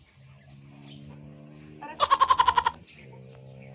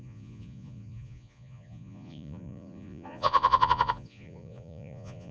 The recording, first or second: first